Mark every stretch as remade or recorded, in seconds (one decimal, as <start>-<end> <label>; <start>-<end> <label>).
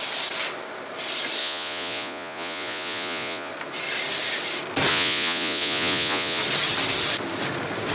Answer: 0.0-1.4 recorded; 1.4-3.5 remade; 3.5-4.9 recorded; 4.9-6.4 remade; 6.4-7.9 recorded